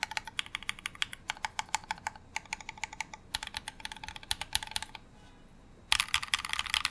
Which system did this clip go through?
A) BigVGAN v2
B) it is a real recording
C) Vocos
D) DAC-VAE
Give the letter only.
B